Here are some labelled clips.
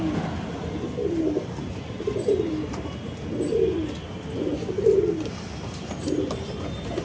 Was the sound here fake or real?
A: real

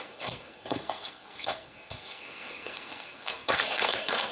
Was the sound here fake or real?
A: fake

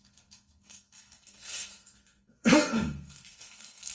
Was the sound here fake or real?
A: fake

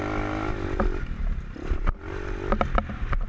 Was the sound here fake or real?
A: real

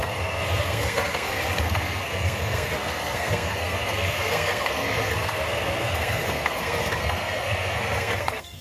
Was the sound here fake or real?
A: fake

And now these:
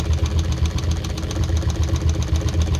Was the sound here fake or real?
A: real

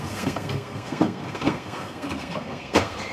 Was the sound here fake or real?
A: fake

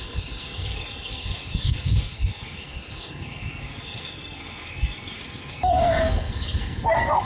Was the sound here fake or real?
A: fake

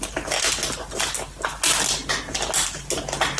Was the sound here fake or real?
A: real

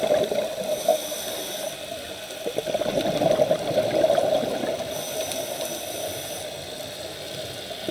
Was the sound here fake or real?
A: real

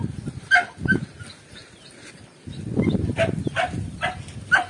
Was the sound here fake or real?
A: real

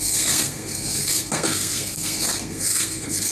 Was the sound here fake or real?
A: fake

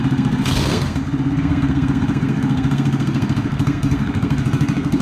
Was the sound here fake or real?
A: fake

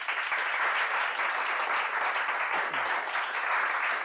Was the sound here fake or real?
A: real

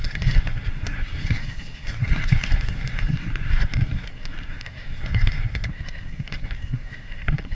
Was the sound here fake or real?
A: fake